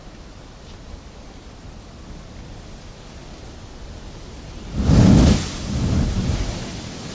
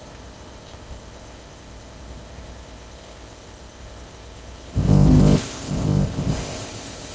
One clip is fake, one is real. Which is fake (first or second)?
second